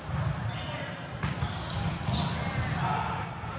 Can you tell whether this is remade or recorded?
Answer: recorded